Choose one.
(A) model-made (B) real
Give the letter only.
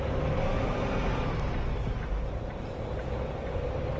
B